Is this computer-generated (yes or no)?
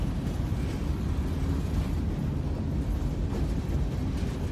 no